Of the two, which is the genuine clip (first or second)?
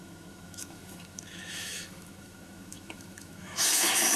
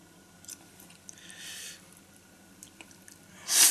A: second